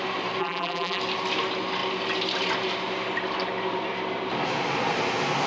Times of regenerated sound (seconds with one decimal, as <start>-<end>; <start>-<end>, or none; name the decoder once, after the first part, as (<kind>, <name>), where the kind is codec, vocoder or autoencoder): 0.4-1.0 (vocoder, BigVGAN v2)